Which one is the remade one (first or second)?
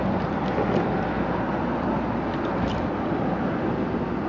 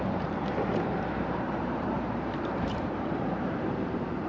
second